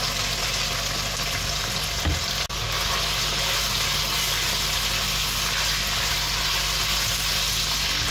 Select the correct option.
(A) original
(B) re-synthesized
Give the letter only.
A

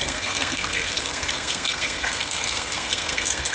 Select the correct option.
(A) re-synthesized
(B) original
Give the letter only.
A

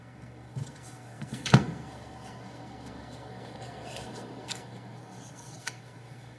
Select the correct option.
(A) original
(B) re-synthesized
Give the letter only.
B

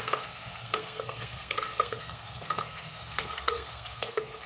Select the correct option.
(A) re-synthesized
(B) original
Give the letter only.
A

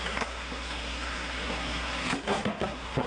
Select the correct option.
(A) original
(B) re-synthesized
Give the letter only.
B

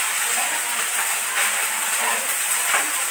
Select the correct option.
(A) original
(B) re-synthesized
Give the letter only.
A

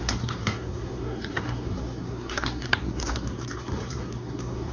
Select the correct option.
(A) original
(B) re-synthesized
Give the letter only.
B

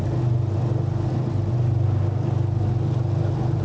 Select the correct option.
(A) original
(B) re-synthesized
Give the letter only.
A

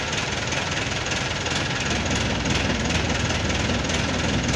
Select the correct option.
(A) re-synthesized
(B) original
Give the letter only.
B